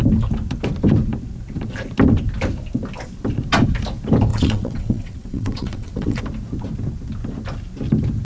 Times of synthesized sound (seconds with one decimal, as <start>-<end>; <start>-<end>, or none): 4.3-6.2